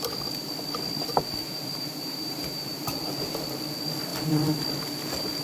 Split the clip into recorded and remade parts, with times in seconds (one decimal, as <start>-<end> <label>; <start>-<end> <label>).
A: 0.0-1.4 recorded; 1.4-2.9 remade; 2.9-5.4 recorded